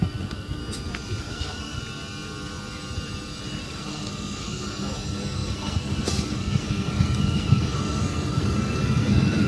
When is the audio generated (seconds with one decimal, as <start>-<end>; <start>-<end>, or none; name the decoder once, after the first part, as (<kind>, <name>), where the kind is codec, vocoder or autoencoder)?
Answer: 0.0-0.6 (codec, SNAC); 1.2-1.8; 3.6-9.5